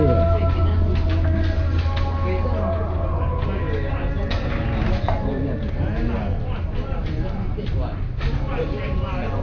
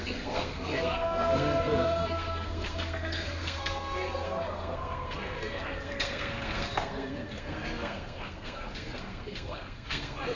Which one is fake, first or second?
second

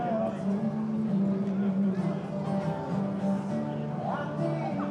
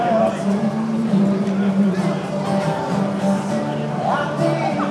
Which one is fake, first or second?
second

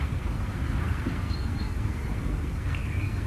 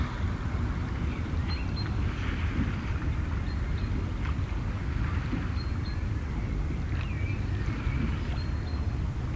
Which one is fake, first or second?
first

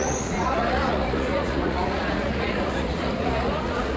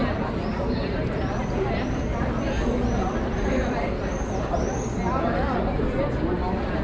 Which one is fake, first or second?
first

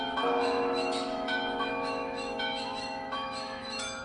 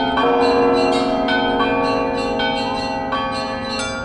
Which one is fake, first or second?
first